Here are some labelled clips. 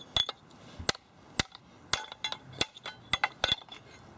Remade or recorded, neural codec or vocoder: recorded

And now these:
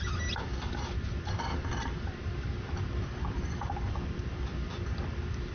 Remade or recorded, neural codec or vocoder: recorded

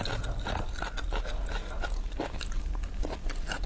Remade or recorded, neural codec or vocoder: recorded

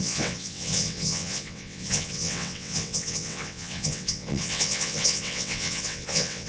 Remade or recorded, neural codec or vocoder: remade, vocoder, WaveNeXt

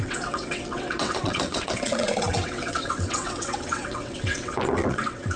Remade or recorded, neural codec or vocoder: remade, vocoder, WaveNeXt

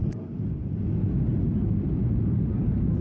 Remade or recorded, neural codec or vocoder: recorded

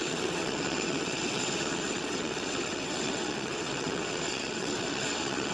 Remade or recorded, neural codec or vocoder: remade, vocoder, WaveNeXt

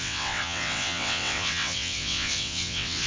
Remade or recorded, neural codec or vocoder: remade, vocoder, WaveNeXt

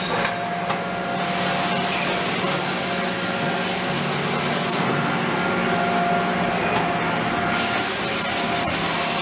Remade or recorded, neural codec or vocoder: recorded